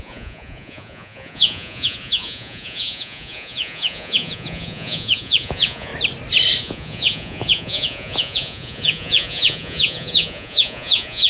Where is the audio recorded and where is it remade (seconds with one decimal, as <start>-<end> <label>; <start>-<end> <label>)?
0.0-5.9 remade; 5.9-6.6 recorded; 6.6-11.3 remade